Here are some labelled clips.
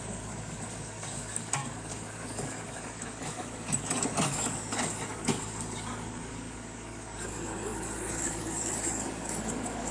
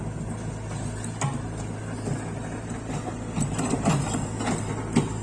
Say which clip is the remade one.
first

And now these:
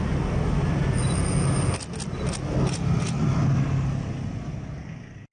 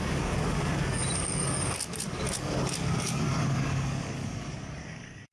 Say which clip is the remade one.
second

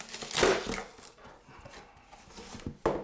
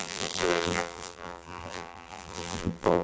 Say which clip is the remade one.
second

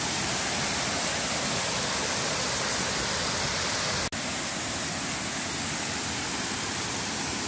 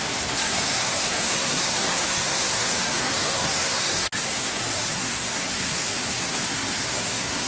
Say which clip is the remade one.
second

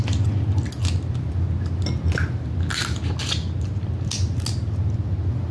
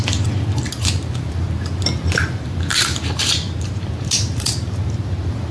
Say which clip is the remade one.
second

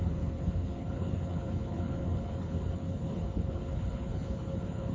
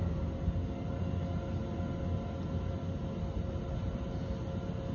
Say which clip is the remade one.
first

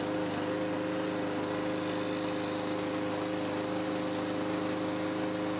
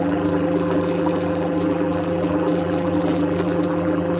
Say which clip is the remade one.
second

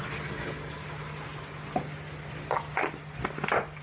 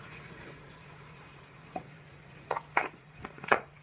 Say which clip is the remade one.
second